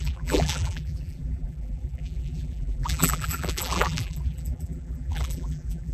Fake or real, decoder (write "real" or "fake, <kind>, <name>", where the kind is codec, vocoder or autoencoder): fake, vocoder, BigVGAN v2